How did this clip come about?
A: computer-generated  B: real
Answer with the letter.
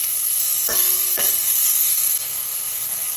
A